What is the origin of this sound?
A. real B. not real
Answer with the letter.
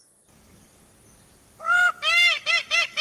B